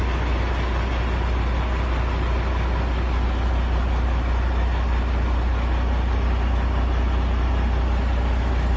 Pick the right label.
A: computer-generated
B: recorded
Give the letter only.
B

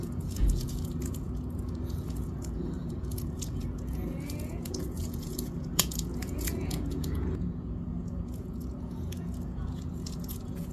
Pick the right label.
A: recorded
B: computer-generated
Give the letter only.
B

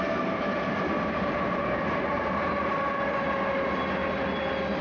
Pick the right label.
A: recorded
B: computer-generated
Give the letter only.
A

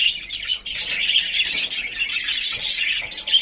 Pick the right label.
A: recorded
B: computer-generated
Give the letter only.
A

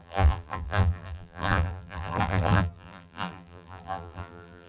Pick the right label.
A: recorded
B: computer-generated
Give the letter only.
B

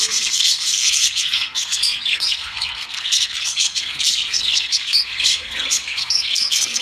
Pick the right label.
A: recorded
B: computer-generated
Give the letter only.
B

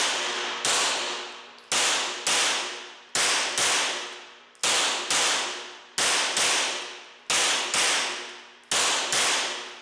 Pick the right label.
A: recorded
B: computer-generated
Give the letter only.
A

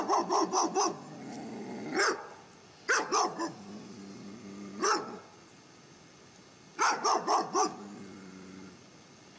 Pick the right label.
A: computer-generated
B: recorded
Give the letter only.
B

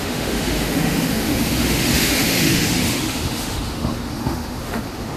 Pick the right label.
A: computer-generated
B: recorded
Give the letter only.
A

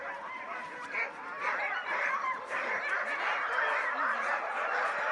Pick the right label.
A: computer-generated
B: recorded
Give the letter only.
B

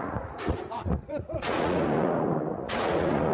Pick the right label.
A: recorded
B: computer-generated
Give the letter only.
B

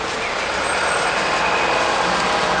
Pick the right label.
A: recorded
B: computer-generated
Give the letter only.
A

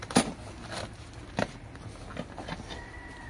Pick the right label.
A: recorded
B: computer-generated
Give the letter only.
A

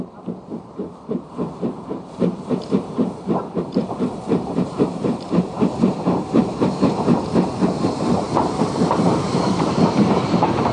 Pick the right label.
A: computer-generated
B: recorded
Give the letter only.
A